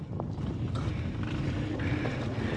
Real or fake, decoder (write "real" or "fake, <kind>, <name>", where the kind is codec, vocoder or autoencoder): real